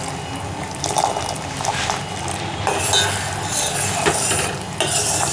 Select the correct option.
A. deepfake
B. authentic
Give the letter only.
B